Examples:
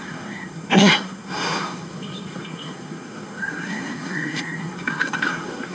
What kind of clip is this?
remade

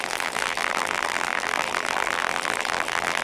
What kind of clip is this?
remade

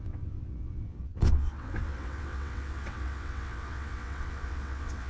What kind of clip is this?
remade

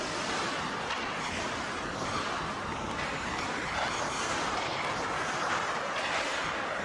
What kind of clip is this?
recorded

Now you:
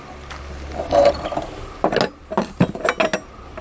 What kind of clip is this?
recorded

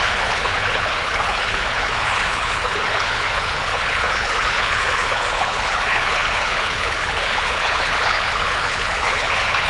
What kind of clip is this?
remade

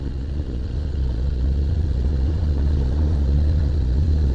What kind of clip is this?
remade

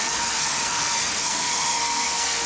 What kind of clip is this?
remade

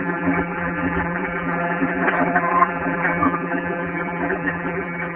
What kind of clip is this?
remade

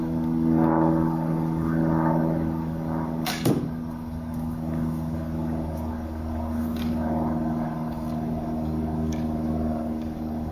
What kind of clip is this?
remade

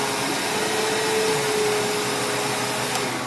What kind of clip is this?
recorded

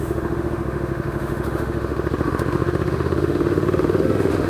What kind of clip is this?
remade